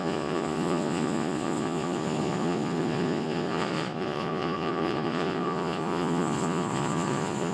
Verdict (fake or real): fake